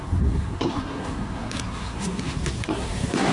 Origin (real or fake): fake